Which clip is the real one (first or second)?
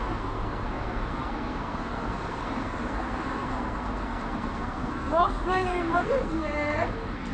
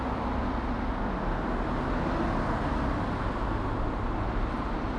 second